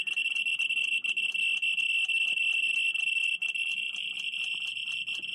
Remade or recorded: recorded